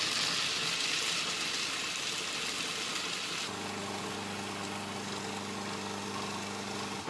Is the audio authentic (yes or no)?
yes